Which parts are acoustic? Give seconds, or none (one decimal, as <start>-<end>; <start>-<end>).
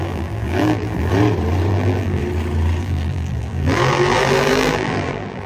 1.1-1.7; 2.2-2.8